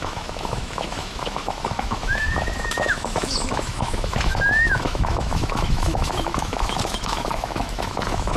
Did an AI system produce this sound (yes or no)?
yes